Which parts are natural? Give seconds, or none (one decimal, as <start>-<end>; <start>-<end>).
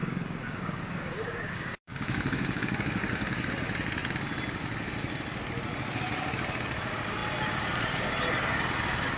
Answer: 3.5-9.2